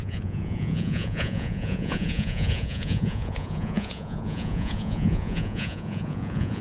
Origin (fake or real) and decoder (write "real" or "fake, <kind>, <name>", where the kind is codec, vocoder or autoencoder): fake, vocoder, Vocos